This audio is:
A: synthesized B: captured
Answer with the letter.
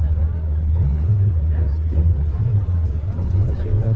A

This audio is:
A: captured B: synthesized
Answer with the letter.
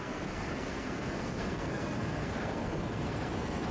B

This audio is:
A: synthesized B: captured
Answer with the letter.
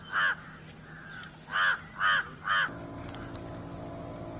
B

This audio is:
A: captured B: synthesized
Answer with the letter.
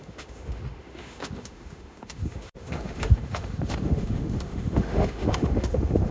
B